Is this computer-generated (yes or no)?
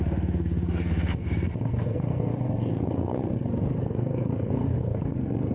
yes